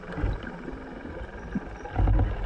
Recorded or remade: recorded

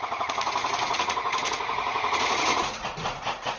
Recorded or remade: remade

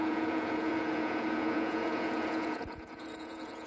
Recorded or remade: remade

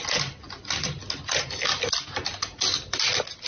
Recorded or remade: recorded